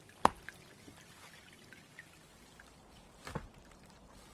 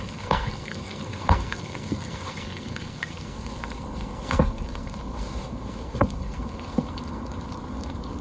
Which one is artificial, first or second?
second